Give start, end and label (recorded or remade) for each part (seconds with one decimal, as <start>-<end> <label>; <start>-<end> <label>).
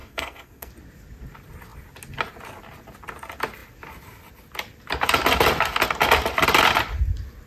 0.0-0.7 remade; 0.7-7.5 recorded